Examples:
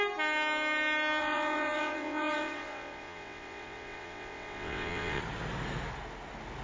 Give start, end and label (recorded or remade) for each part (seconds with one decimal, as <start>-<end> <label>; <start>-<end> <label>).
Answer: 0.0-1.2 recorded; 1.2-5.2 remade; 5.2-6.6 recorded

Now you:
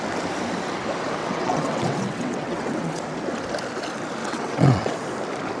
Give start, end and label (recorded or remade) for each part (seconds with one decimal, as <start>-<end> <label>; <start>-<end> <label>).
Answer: 0.0-1.2 recorded; 1.2-3.0 remade; 3.0-4.2 recorded; 4.2-5.0 remade; 5.0-5.6 recorded

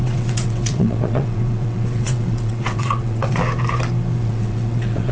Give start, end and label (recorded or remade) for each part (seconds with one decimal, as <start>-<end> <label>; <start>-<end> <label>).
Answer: 0.0-3.4 remade; 3.4-4.2 recorded; 4.2-5.1 remade

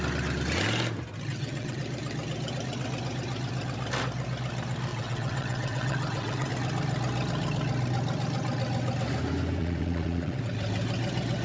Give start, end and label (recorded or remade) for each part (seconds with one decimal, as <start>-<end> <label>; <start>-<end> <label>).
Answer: 0.0-1.3 recorded; 1.3-1.8 remade; 1.8-4.9 recorded; 4.9-6.5 remade; 6.5-9.6 recorded; 9.6-10.4 remade; 10.4-11.4 recorded

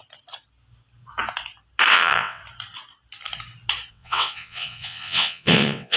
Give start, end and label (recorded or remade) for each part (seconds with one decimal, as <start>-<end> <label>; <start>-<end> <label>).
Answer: 0.0-1.9 recorded; 1.9-2.4 remade; 2.4-3.9 recorded; 3.9-6.0 remade

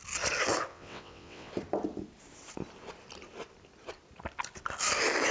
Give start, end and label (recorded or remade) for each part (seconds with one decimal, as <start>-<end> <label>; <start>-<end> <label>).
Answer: 0.0-0.7 recorded; 0.7-1.5 remade; 1.5-5.3 recorded

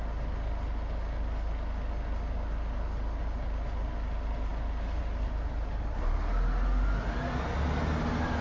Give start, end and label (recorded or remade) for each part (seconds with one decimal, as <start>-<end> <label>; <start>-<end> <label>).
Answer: 0.0-8.4 recorded

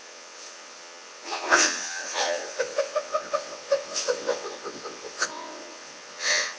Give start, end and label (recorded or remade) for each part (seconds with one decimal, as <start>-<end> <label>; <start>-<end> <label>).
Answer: 0.0-6.6 remade